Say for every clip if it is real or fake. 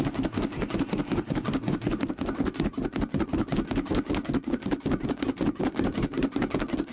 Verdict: real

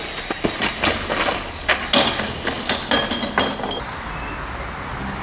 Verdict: real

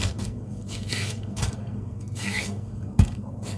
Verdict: fake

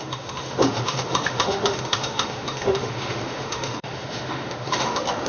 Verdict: fake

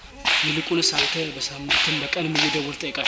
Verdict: real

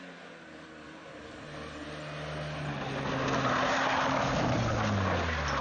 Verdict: real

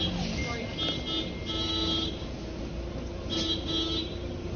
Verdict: real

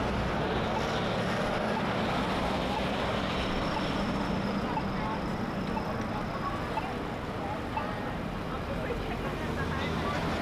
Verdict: real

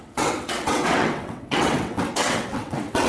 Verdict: fake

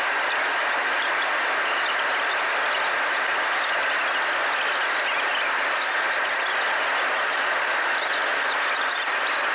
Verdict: real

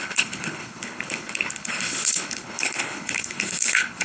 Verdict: fake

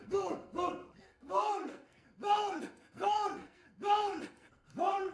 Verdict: fake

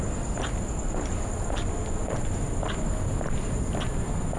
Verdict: real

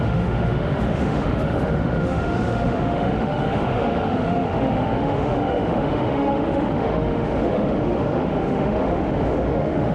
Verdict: fake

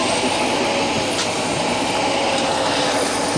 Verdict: real